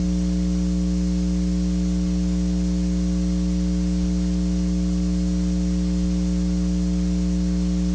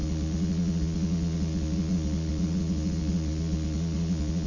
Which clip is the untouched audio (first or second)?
first